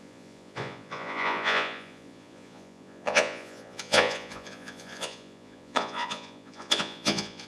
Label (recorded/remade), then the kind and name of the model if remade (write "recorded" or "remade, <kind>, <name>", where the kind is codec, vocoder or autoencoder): remade, vocoder, Vocos